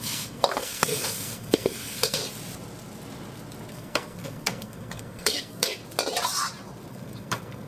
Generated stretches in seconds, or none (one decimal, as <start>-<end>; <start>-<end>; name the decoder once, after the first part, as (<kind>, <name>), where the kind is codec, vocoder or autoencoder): 0.0-2.2 (codec, SNAC); 3.7-5.8; 6.9-7.7